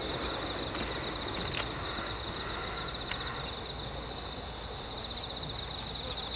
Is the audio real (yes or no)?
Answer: yes